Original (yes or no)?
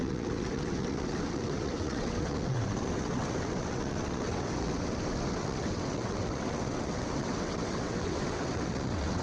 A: no